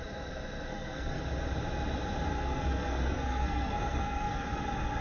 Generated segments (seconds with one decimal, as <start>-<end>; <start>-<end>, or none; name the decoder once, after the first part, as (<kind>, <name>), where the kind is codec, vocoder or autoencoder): 0.7-1.2 (codec, SNAC); 2.3-4.6